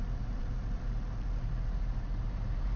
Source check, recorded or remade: remade